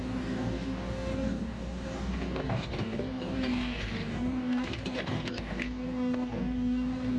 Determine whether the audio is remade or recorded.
remade